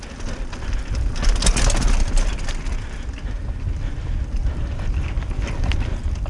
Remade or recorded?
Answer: recorded